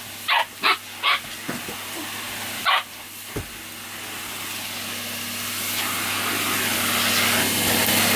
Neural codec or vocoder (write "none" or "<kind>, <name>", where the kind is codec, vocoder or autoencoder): none